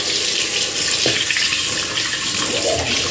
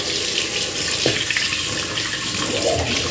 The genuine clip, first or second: first